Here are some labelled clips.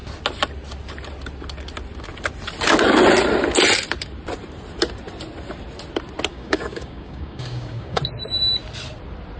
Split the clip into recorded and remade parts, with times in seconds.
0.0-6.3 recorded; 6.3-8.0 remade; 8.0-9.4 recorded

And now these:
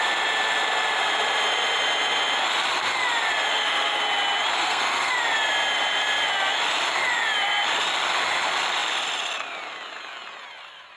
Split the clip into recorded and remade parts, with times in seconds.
0.0-3.5 recorded; 3.5-4.0 remade; 4.0-4.6 recorded; 4.6-5.1 remade; 5.1-11.0 recorded

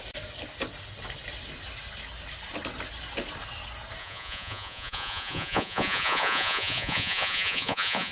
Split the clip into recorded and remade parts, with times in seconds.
0.0-4.0 recorded; 4.0-8.1 remade

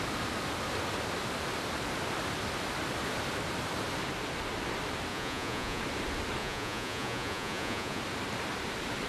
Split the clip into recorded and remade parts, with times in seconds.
0.0-5.1 recorded; 5.1-5.8 remade; 5.8-6.4 recorded; 6.4-8.0 remade; 8.0-9.1 recorded

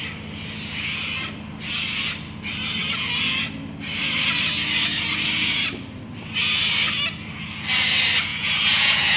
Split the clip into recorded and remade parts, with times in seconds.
0.0-8.3 recorded; 8.3-9.2 remade

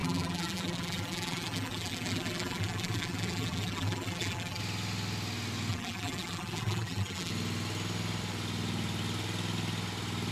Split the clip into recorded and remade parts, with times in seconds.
0.0-4.6 remade; 4.6-5.7 recorded; 5.7-7.3 remade; 7.3-10.3 recorded

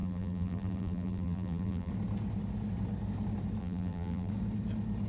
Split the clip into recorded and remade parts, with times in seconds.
0.0-1.9 remade; 1.9-3.6 recorded; 3.6-4.3 remade; 4.3-5.1 recorded